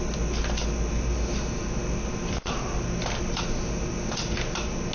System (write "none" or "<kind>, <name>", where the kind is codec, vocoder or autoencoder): none